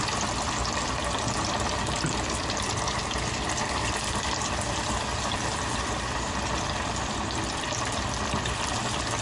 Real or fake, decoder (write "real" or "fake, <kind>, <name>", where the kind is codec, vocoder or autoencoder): real